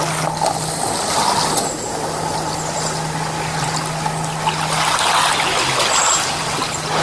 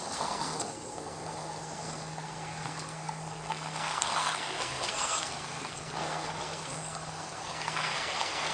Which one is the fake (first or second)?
second